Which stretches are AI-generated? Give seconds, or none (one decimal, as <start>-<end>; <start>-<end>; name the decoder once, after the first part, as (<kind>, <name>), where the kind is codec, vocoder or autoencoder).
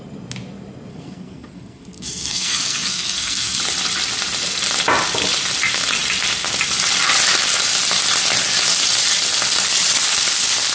0.9-3.6 (codec, SNAC)